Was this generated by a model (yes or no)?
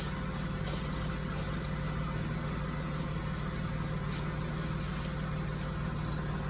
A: no